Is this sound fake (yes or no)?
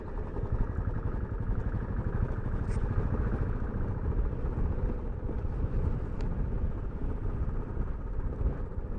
no